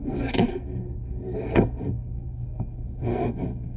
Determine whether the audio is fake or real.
fake